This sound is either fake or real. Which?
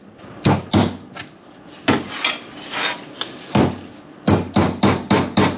real